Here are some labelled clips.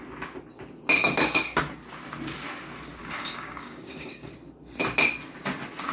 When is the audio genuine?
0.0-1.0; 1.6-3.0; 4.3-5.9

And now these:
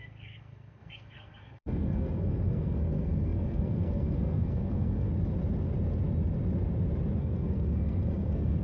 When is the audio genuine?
5.1-7.2

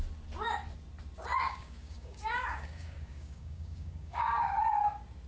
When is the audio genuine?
0.0-1.3; 4.5-5.3

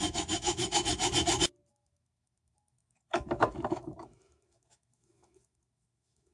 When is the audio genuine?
1.0-1.7

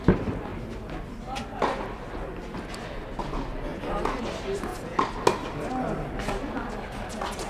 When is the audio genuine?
4.7-5.5

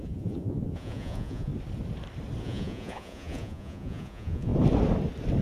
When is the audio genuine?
1.5-2.4; 4.5-5.4

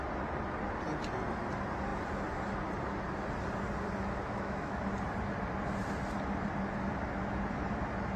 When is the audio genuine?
0.0-4.2; 4.8-8.2